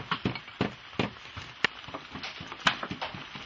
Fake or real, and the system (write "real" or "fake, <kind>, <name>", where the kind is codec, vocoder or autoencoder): real